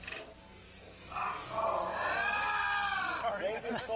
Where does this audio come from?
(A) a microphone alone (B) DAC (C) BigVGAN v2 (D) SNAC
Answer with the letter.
C